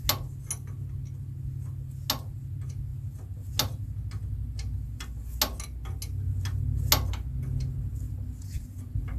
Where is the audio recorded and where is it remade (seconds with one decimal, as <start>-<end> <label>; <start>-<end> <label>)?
0.0-9.2 recorded